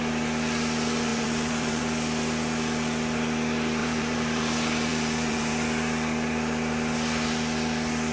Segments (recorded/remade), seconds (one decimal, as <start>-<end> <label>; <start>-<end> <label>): 0.0-1.1 recorded; 1.1-1.8 remade; 1.8-3.8 recorded; 3.8-4.4 remade; 4.4-4.9 recorded; 4.9-5.5 remade; 5.5-8.1 recorded